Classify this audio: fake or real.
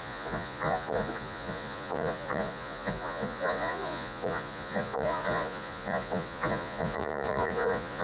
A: fake